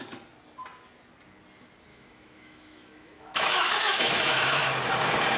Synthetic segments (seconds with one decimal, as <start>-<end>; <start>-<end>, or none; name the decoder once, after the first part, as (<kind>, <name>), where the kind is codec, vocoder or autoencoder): 1.9-4.6 (autoencoder, DAC-VAE)